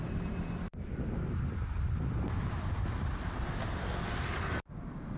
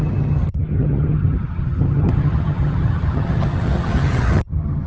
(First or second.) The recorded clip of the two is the first